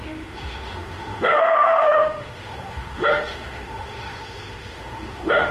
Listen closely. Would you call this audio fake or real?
fake